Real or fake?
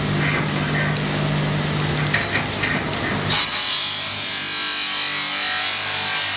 real